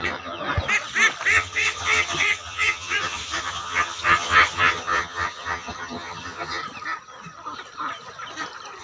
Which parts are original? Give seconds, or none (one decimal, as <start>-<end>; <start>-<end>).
0.4-1.3; 6.6-8.8